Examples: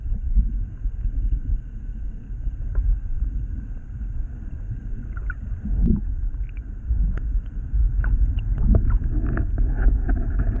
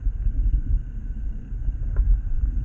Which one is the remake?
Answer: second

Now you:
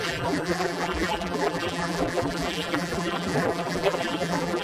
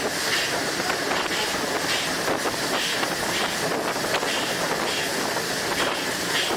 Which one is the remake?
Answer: first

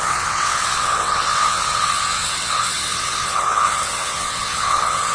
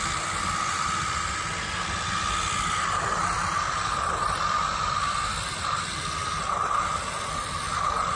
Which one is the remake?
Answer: first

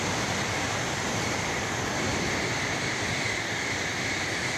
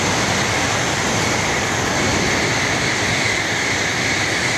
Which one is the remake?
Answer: first